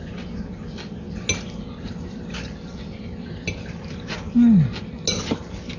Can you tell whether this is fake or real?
real